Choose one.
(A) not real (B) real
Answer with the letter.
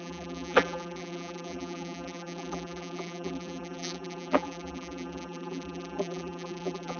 A